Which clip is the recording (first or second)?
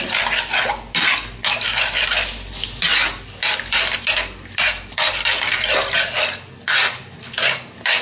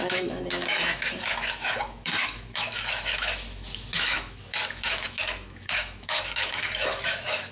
first